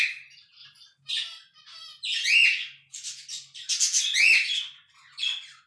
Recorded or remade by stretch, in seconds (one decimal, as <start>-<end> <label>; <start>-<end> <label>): 0.0-5.7 recorded